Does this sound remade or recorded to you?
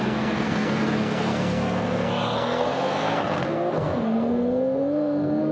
remade